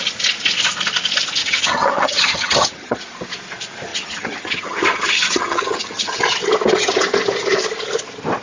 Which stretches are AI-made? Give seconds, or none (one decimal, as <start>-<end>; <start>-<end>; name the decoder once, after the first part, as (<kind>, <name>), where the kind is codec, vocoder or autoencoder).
1.4-3.0 (vocoder, HiFi-GAN); 3.9-6.2